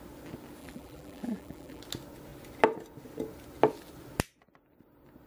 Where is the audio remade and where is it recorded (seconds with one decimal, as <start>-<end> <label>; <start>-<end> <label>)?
0.0-0.6 recorded; 0.6-1.8 remade; 1.8-5.3 recorded